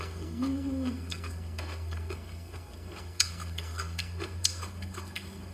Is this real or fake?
fake